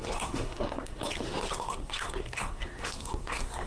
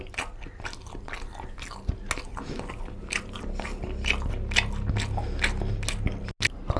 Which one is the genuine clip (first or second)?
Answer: second